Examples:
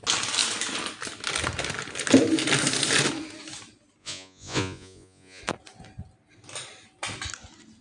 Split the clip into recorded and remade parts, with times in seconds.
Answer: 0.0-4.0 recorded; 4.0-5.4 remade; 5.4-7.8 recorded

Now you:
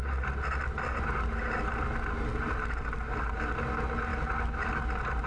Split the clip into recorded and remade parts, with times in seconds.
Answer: 0.0-5.3 recorded

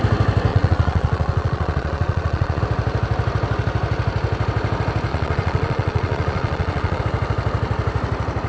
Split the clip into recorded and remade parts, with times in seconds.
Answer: 0.0-0.5 recorded; 0.5-2.6 remade; 2.6-5.1 recorded; 5.1-7.0 remade; 7.0-8.5 recorded

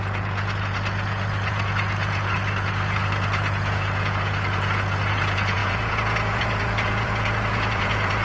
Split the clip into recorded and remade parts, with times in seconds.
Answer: 0.0-8.2 remade

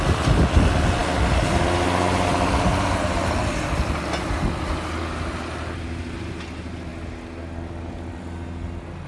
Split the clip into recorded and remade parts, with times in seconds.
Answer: 0.0-9.1 recorded

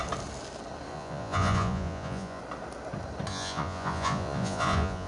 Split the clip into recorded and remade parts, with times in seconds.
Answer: 0.0-0.9 recorded; 0.9-2.4 remade; 2.4-3.3 recorded; 3.3-5.1 remade